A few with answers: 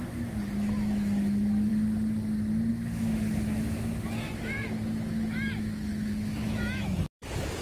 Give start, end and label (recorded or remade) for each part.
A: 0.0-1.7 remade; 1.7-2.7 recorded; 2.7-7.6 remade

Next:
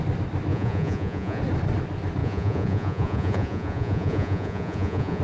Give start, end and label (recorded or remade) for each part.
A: 0.0-0.5 recorded; 0.5-1.4 remade; 1.4-2.2 recorded; 2.2-5.2 remade

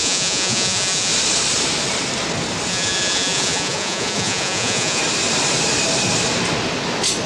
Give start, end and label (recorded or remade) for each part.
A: 0.0-1.1 remade; 1.1-2.7 recorded; 2.7-5.0 remade; 5.0-7.3 recorded

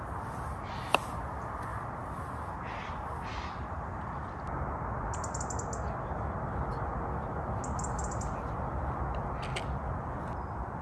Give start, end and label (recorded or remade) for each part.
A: 0.0-10.8 recorded

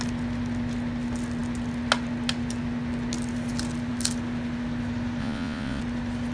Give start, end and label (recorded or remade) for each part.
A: 0.0-5.2 recorded; 5.2-5.8 remade; 5.8-6.3 recorded

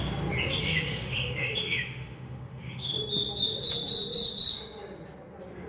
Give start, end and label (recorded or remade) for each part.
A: 0.0-0.6 recorded; 0.6-3.0 remade; 3.0-5.7 recorded

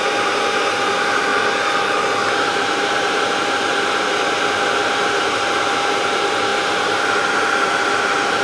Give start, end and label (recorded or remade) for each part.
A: 0.0-1.3 remade; 1.3-2.3 recorded; 2.3-8.4 remade